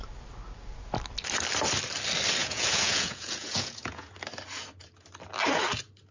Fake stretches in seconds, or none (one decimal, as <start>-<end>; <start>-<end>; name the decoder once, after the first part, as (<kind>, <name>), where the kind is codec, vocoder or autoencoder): 2.4-4.1 (vocoder, Vocos)